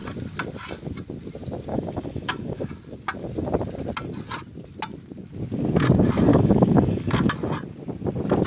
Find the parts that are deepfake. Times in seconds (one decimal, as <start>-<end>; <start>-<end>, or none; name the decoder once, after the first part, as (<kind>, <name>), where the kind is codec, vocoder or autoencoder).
1.7-2.7 (codec, DAC); 6.3-7.3